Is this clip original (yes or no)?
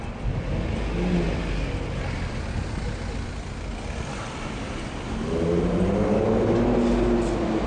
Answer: yes